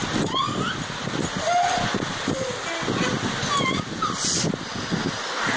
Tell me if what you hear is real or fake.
real